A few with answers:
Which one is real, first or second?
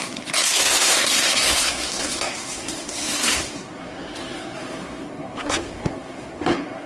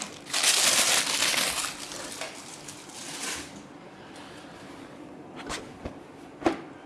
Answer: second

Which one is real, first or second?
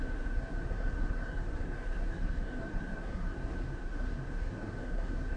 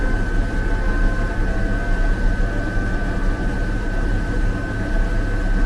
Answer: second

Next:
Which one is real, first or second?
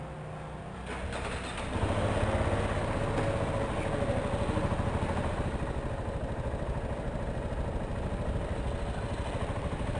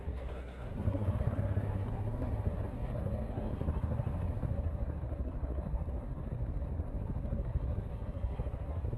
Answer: first